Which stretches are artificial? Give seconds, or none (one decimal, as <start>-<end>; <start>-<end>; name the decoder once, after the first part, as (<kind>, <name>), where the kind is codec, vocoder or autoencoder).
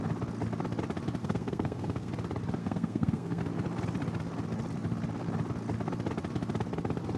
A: 1.2-2.1 (codec, SNAC); 2.6-3.4